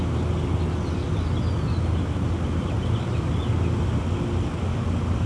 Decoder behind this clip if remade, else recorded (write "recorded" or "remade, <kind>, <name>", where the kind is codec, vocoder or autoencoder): recorded